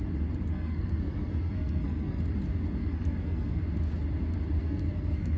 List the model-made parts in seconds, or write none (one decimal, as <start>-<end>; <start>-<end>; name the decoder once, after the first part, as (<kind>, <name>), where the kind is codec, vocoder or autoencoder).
0.5-2.2 (codec, SNAC); 2.8-3.6; 4.6-5.4